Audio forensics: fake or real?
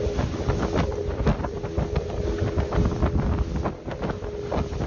real